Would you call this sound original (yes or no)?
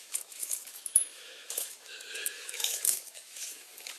no